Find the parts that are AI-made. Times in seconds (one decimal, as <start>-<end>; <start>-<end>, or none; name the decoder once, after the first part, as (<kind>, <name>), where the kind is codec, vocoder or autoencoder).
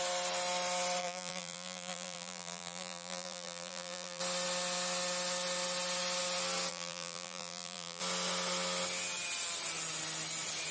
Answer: 1.0-4.2 (vocoder, BigVGAN v2); 6.7-8.0